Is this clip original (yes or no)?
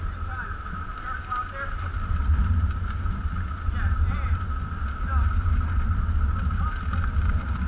yes